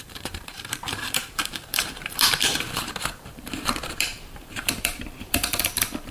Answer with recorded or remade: remade